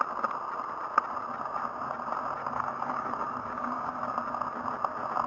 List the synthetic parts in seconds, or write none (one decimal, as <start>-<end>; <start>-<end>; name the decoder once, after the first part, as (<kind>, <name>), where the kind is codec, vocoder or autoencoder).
2.4-4.0 (codec, DAC)